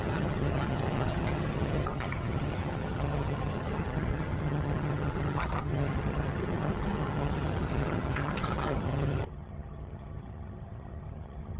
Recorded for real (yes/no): no